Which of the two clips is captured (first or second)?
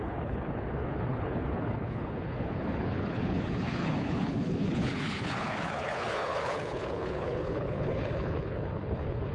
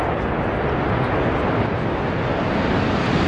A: second